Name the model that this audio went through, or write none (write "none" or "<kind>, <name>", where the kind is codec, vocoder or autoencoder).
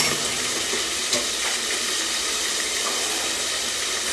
none